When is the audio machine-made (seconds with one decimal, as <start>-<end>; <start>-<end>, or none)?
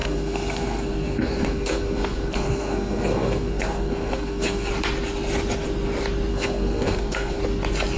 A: 0.0-4.7; 6.3-7.4